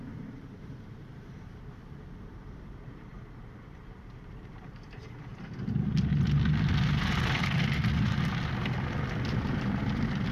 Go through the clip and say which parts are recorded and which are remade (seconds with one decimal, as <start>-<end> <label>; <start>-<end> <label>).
0.0-5.3 remade; 5.3-10.3 recorded